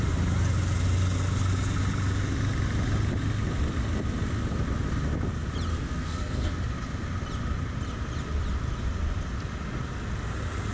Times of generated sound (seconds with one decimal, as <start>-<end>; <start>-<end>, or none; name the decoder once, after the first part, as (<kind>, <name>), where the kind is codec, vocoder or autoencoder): 5.7-6.5 (codec, SNAC)